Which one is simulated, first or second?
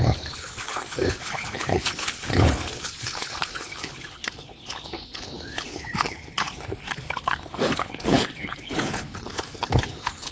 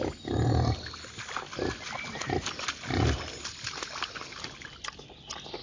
first